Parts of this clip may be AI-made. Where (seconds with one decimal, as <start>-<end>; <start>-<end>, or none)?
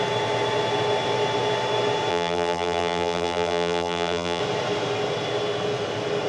2.1-4.4